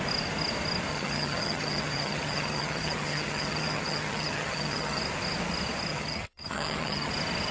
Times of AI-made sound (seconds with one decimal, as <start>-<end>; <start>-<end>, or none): 0.9-5.0; 5.9-7.1